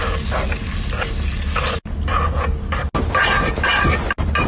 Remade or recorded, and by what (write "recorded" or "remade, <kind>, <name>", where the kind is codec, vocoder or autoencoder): recorded